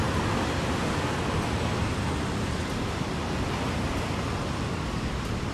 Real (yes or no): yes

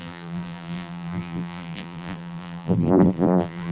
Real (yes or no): no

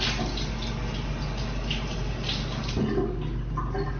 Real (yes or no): yes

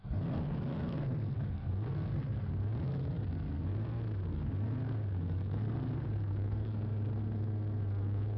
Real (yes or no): no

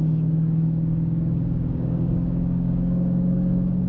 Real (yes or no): no